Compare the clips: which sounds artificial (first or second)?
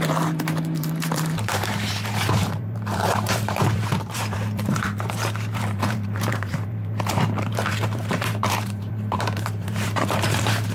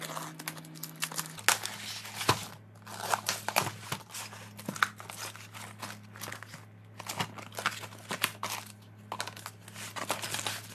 first